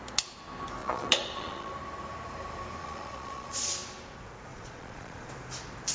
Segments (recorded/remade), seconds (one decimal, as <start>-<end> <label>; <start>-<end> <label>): 0.0-0.8 recorded; 0.8-1.7 remade; 1.7-2.8 recorded; 2.8-3.7 remade; 3.7-4.5 recorded; 4.5-5.3 remade; 5.3-5.9 recorded